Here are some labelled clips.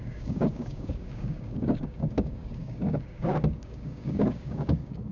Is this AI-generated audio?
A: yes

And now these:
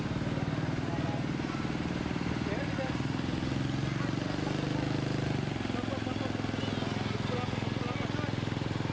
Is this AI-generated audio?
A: no